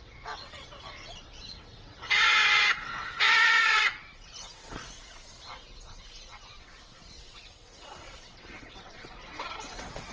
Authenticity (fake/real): fake